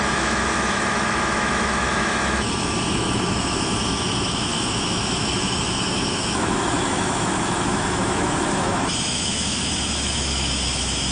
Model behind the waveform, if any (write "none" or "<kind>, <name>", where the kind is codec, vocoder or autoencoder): autoencoder, DAC-VAE